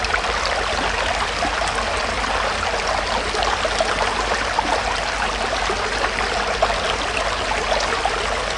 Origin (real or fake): real